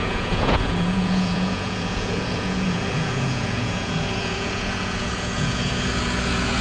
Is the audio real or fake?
fake